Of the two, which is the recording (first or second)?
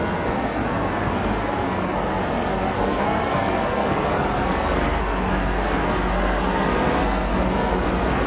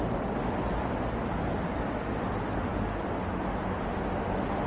second